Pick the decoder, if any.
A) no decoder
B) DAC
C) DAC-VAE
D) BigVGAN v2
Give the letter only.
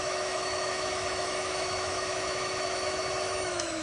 C